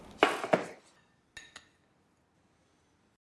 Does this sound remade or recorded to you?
recorded